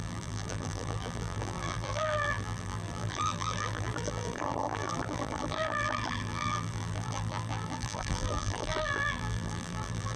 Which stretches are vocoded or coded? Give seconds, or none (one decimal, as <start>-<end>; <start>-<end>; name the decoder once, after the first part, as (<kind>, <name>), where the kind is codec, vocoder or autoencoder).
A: 0.0-10.2 (vocoder, BigVGAN v2)